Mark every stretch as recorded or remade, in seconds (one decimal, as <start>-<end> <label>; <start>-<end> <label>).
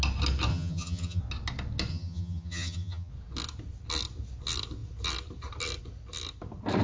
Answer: 0.0-0.5 recorded; 0.5-1.2 remade; 1.2-1.9 recorded; 1.9-3.1 remade; 3.1-6.8 recorded